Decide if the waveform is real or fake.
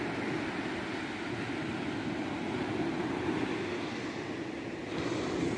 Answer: real